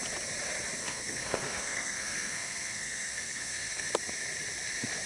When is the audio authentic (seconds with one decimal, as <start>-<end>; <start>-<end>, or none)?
0.0-0.8; 3.9-5.1